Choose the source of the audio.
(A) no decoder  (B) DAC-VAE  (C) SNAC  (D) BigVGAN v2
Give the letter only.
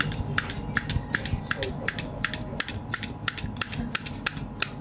A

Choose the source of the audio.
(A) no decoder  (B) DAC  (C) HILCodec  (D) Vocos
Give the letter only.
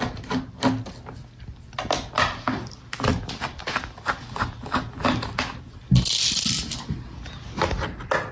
A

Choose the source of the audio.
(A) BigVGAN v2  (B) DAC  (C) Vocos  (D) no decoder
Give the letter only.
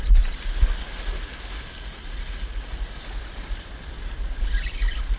D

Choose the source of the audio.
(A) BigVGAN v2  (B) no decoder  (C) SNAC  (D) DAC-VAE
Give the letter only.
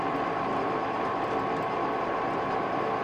B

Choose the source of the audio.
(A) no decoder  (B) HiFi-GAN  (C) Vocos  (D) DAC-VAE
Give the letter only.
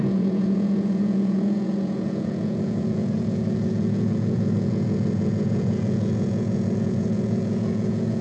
C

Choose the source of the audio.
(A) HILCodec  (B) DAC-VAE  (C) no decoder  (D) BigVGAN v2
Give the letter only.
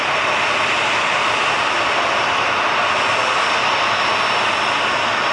C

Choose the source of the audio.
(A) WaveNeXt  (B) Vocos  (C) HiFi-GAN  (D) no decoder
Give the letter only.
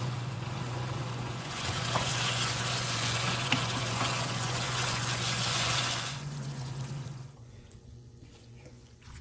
B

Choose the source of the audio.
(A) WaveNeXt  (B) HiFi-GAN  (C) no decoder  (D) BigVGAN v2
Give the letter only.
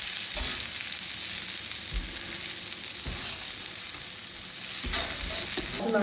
C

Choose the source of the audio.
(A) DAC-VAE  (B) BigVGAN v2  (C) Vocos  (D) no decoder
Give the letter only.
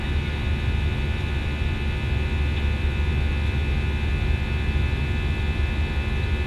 D